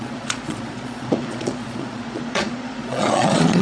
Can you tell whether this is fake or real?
fake